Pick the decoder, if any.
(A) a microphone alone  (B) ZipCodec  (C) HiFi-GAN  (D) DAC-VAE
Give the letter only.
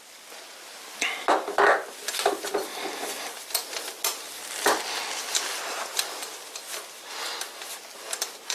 A